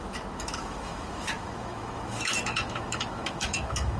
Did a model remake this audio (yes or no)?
yes